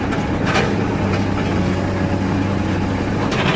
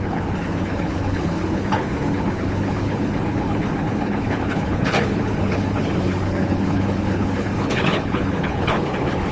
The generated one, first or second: second